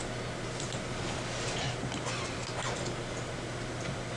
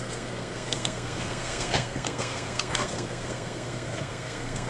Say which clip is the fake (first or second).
second